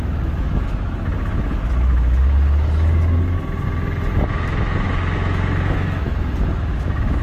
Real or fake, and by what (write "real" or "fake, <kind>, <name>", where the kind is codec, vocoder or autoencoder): fake, autoencoder, DAC-VAE